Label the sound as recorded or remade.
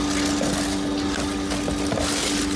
recorded